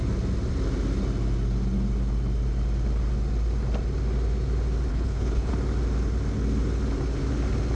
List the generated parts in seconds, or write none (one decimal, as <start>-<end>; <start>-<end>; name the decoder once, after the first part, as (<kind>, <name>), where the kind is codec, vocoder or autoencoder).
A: 4.9-5.5 (codec, HILCodec)